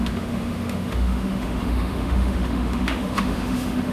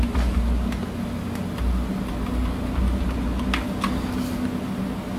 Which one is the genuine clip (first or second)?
second